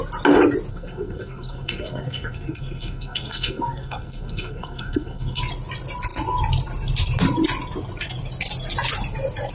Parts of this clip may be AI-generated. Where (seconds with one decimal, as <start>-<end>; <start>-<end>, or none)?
0.7-5.4